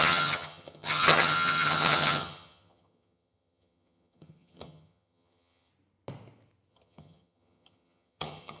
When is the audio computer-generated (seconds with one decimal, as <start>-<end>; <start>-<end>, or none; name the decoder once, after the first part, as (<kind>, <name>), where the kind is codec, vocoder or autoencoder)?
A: 0.0-5.7 (vocoder, HiFi-GAN); 6.7-8.6